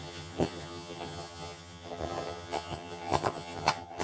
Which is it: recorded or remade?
remade